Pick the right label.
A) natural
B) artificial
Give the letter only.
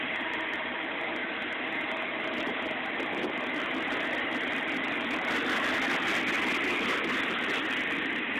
A